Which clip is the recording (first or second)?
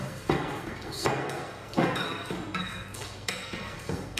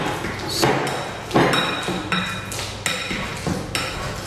second